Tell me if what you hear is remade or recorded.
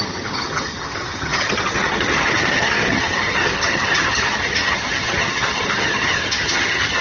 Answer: remade